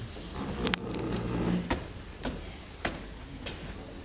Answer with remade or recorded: recorded